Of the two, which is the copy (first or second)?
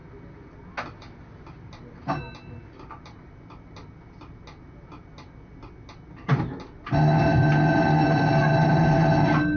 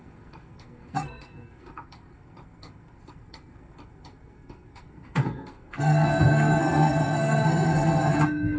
second